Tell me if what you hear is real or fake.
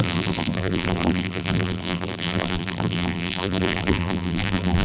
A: fake